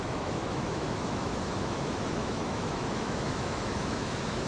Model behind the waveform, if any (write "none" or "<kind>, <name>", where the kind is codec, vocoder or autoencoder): autoencoder, DAC-VAE